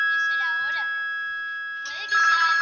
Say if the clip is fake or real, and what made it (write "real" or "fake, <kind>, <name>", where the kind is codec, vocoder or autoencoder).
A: real